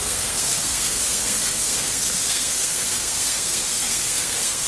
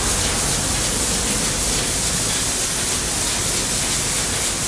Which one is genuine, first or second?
second